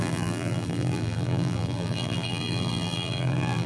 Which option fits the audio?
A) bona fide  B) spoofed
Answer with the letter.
B